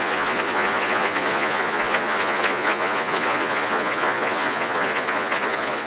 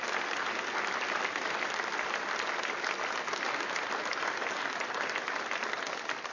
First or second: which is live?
second